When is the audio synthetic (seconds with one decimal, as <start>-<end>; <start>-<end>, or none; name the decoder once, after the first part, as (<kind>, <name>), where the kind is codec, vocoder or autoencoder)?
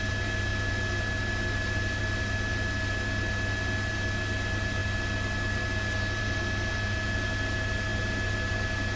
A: none